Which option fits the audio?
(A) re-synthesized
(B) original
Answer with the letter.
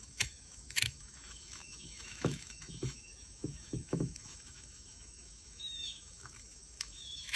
A